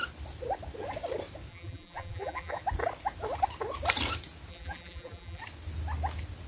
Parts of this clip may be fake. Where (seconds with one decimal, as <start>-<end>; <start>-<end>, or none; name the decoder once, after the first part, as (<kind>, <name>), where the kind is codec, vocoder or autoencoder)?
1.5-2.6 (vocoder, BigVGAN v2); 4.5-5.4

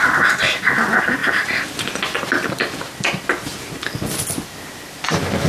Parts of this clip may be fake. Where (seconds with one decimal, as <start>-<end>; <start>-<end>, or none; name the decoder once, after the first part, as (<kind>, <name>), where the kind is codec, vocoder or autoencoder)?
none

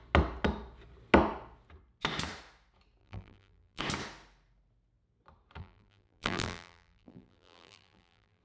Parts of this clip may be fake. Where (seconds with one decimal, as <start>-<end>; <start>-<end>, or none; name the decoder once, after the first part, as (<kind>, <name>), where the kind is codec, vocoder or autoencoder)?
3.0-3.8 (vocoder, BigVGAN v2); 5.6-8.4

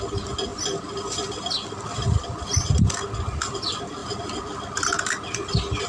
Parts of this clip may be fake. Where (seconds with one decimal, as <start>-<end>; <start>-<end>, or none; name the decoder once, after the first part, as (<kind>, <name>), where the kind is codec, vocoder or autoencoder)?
0.5-2.9 (vocoder, BigVGAN v2); 4.0-5.0

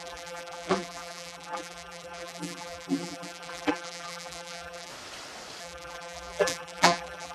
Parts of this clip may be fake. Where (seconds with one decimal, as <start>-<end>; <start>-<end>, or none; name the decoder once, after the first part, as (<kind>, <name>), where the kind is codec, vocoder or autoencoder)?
0.0-4.9 (vocoder, BigVGAN v2); 5.6-7.3

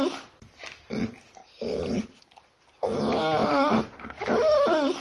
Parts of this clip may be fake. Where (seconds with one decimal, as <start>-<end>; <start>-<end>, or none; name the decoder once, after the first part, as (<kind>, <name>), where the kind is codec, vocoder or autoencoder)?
3.4-4.0 (vocoder, BigVGAN v2)

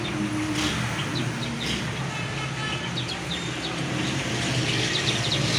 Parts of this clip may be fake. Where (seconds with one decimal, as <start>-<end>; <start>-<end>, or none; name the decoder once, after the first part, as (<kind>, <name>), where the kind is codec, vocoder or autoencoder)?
none